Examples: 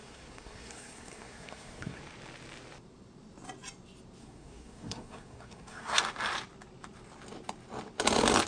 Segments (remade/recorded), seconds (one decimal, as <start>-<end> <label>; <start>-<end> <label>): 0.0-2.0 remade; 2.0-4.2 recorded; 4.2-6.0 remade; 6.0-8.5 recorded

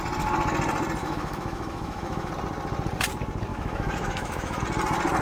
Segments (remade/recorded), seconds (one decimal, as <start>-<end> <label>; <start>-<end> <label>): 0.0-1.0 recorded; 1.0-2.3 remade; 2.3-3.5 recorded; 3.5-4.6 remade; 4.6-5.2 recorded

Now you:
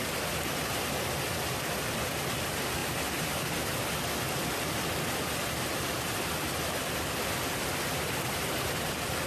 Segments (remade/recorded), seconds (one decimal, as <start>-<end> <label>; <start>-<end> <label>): 0.0-9.3 recorded

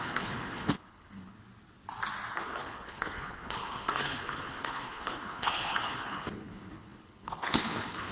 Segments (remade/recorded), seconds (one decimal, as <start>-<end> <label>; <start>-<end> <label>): 0.0-1.3 remade; 1.3-2.3 recorded; 2.3-8.1 remade

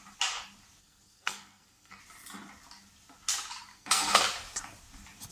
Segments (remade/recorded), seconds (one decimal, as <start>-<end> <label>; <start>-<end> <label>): 0.0-0.8 recorded; 0.8-2.0 remade; 2.0-3.7 recorded; 3.7-4.2 remade; 4.2-5.3 recorded